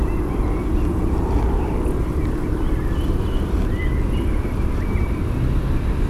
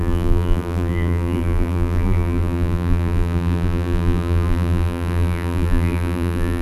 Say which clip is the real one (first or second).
first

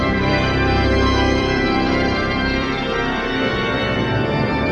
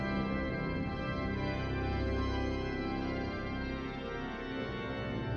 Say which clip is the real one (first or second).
second